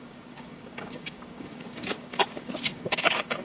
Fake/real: fake